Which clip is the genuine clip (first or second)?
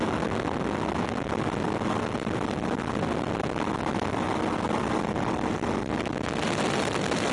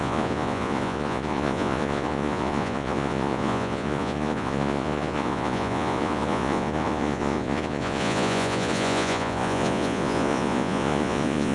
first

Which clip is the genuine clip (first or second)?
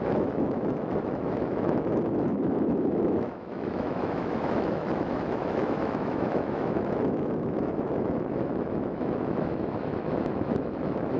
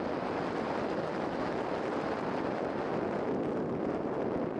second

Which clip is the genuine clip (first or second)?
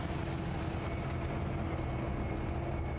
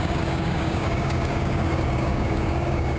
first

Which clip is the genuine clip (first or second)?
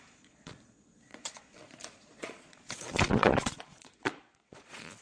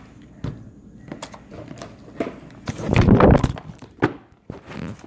second